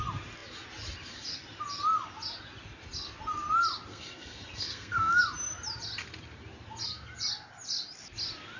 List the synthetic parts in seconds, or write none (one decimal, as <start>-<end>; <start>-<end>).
3.9-5.2